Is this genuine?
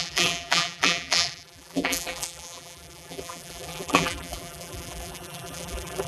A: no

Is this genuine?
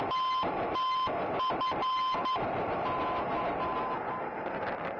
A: yes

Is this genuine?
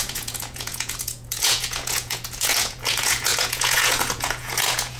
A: no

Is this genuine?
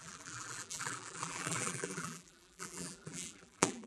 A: no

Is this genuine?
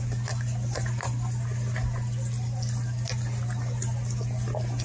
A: yes